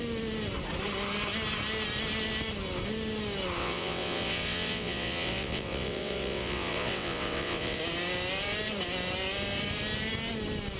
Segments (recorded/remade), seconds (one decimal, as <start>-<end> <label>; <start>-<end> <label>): 0.0-3.6 recorded; 3.6-7.8 remade; 7.8-10.8 recorded